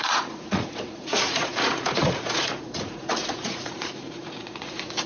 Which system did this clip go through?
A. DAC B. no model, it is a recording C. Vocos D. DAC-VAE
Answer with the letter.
C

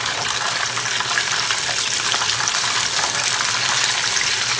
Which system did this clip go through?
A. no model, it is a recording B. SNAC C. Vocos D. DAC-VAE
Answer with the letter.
A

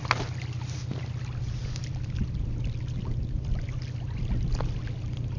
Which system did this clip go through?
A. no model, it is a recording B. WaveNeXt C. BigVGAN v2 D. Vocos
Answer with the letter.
A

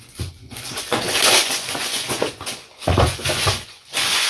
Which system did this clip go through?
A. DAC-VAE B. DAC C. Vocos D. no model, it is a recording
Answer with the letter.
C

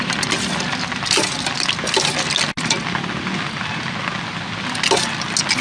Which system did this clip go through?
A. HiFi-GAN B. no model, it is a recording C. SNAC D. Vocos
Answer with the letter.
B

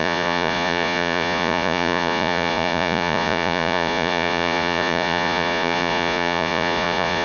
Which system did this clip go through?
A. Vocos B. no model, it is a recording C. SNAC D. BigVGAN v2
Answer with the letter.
A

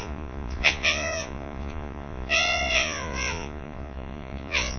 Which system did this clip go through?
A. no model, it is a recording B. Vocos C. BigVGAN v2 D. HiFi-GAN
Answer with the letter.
B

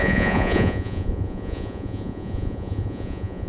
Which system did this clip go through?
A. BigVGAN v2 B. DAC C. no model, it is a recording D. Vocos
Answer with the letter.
D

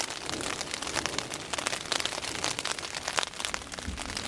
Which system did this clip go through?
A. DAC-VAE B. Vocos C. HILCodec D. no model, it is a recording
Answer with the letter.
D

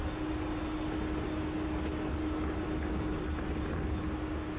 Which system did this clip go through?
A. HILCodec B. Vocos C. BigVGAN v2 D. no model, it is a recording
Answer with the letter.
D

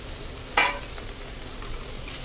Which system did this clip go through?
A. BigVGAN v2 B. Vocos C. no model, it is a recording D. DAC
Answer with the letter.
C